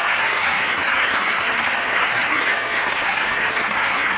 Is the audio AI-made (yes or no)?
yes